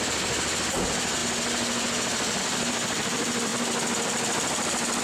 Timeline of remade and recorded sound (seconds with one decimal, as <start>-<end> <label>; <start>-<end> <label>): 0.0-1.2 remade; 1.2-2.4 recorded; 2.4-3.5 remade; 3.5-5.0 recorded